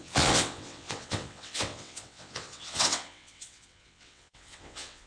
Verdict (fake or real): fake